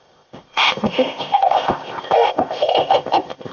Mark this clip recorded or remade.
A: remade